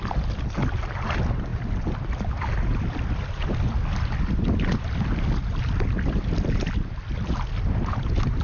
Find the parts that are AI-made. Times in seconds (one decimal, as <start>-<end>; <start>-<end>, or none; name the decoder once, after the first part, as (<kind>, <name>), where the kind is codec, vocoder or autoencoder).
none